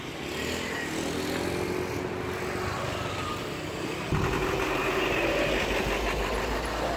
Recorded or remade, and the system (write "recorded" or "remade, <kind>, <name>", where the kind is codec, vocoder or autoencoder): recorded